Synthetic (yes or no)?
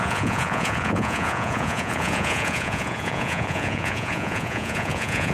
yes